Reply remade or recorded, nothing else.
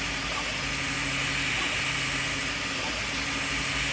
recorded